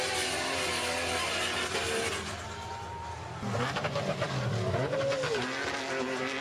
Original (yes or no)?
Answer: yes